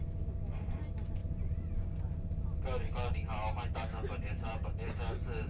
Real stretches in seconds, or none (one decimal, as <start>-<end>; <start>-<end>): 0.0-1.2; 4.5-5.5